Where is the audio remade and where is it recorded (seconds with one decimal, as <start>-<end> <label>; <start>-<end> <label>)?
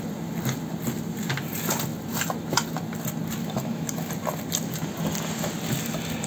0.0-3.4 recorded; 3.4-4.1 remade; 4.1-6.3 recorded